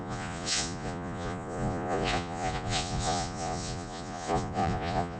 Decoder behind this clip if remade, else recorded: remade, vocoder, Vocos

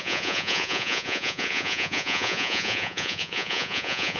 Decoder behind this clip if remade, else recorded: remade, vocoder, Vocos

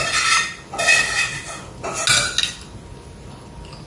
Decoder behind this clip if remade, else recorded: recorded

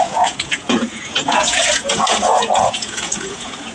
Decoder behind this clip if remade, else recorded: remade, vocoder, Vocos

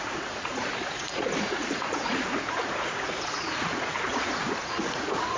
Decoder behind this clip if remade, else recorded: remade, vocoder, Vocos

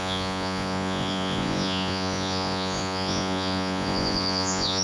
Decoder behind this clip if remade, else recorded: remade, vocoder, Vocos